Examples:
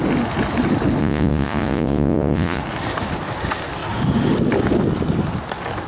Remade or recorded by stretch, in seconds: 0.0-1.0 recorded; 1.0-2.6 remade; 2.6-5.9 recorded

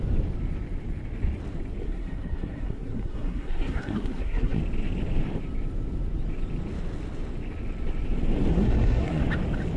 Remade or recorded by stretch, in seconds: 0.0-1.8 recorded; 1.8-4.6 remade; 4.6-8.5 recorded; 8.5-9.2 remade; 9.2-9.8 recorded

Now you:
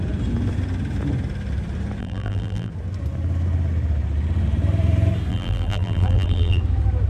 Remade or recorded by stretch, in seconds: 0.0-2.0 recorded; 2.0-2.7 remade; 2.7-5.3 recorded; 5.3-6.6 remade; 6.6-7.1 recorded

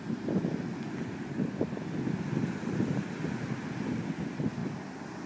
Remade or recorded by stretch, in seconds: 0.0-5.3 recorded

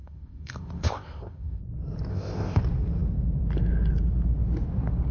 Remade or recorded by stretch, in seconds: 0.0-1.6 remade; 1.6-2.1 recorded; 2.1-2.6 remade; 2.6-5.1 recorded

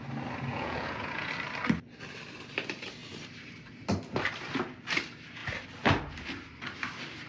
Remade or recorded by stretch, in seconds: 0.0-0.5 recorded; 0.5-1.3 remade; 1.3-7.3 recorded